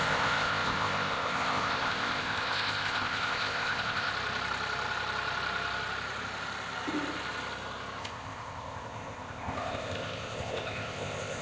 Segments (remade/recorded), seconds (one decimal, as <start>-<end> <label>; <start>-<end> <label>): 0.0-4.1 remade; 4.1-8.0 recorded; 8.0-11.4 remade